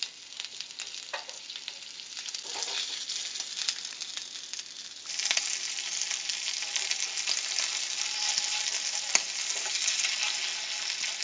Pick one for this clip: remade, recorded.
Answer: recorded